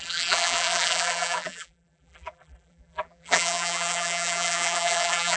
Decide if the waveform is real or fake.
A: fake